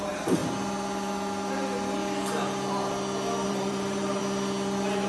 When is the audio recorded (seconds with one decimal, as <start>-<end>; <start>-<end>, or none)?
0.4-3.5; 4.2-5.1